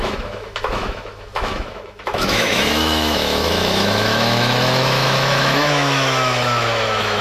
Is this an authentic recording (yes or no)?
no